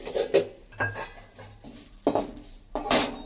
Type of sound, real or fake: real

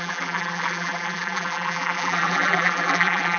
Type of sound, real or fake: fake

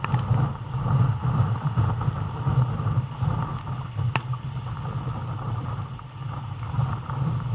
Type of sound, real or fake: real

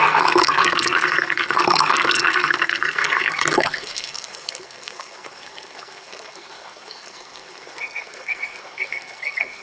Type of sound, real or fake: fake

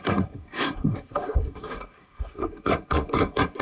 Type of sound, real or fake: fake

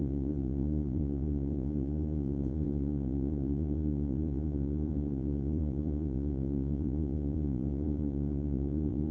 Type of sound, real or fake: fake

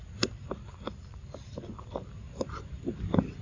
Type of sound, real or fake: real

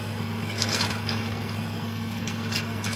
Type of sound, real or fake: fake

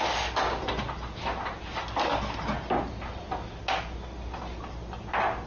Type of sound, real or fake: real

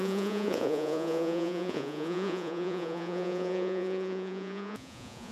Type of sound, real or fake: fake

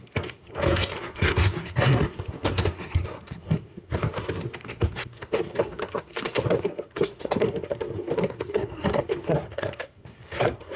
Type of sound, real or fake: fake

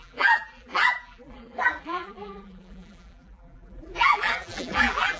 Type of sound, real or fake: fake